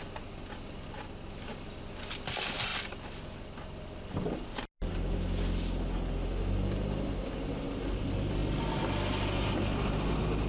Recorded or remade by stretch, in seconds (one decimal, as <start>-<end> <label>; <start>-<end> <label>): 0.0-10.5 recorded